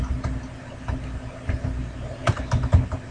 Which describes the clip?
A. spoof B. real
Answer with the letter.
B